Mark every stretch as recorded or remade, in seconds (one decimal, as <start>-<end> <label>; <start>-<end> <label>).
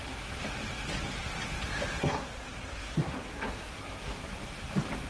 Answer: 0.0-2.0 recorded; 2.0-4.3 remade; 4.3-5.1 recorded